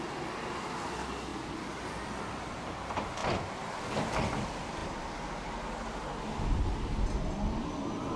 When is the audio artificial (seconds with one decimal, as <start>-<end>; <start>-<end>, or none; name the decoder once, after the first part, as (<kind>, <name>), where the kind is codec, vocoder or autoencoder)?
none